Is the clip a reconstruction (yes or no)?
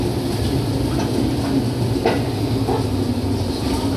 no